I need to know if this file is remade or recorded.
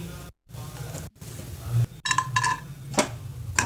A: recorded